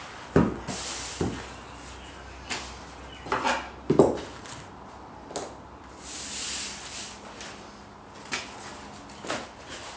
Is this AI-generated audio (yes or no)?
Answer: no